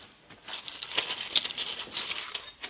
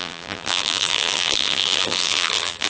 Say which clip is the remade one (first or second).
second